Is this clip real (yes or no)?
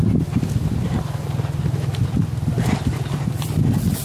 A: yes